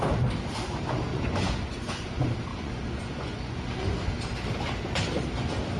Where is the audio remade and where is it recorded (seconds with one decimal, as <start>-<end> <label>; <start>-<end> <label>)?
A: 0.0-1.1 recorded; 1.1-2.1 remade; 2.1-2.5 recorded; 2.5-4.1 remade; 4.1-5.8 recorded